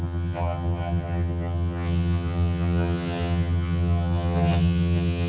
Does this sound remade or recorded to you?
remade